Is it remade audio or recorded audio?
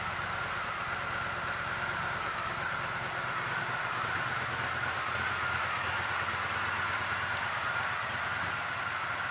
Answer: recorded